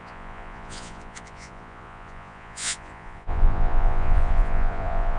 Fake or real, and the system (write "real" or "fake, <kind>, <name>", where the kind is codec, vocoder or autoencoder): fake, vocoder, Vocos